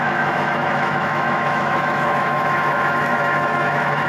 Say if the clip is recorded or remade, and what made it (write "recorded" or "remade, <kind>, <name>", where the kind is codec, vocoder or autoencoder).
remade, autoencoder, DAC-VAE